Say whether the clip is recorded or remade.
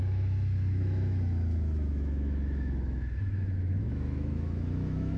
remade